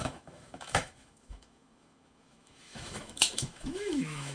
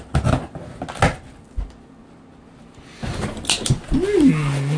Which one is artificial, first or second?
first